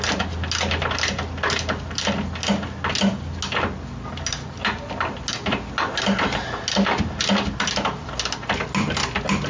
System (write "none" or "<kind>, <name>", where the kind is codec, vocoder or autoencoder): none